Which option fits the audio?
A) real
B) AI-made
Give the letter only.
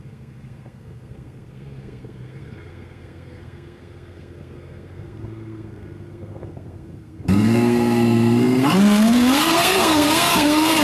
B